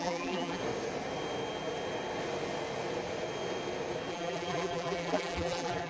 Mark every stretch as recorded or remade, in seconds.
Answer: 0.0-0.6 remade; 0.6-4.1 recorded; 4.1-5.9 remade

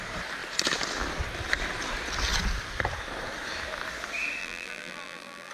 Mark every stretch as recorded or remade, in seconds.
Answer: 0.0-4.4 recorded; 4.4-5.5 remade

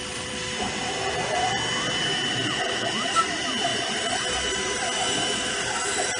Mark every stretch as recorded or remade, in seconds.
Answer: 0.0-0.8 remade; 0.8-1.4 recorded; 1.4-6.2 remade